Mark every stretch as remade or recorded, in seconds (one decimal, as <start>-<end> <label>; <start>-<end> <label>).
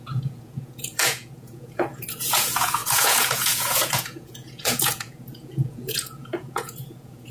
0.0-7.3 remade